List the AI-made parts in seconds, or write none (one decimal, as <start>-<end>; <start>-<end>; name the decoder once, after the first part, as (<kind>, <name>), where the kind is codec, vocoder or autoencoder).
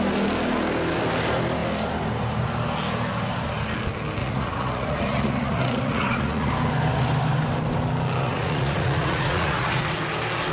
4.2-6.5 (vocoder, Vocos); 8.2-9.8